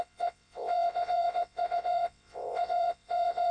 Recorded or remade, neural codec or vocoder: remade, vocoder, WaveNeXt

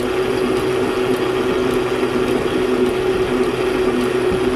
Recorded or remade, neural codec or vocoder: recorded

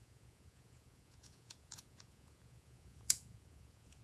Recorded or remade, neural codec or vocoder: remade, vocoder, Vocos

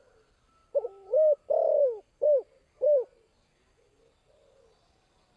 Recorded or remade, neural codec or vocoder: recorded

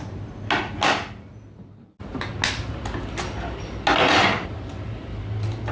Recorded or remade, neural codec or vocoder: recorded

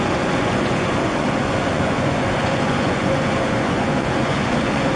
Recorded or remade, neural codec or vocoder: remade, vocoder, Vocos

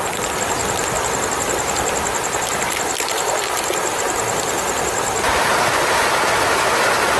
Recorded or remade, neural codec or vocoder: recorded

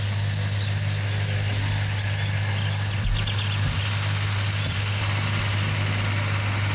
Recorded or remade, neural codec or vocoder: recorded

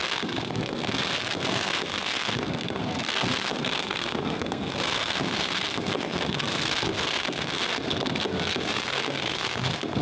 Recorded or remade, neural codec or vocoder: remade, codec, SNAC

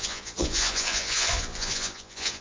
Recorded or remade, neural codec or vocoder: remade, vocoder, Vocos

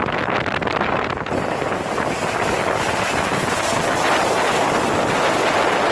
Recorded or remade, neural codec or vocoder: recorded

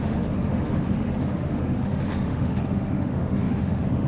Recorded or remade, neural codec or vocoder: remade, autoencoder, DAC-VAE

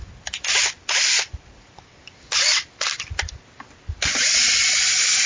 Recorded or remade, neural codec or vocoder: recorded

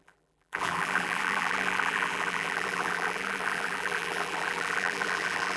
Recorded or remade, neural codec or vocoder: remade, vocoder, BigVGAN v2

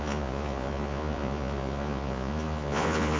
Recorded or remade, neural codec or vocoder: remade, vocoder, Vocos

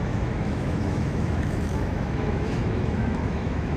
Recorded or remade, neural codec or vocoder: remade, autoencoder, DAC-VAE